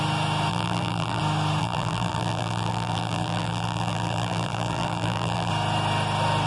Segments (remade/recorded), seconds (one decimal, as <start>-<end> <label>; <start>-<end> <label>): 0.0-0.5 recorded; 0.5-1.2 remade; 1.2-1.6 recorded; 1.6-5.5 remade; 5.5-6.5 recorded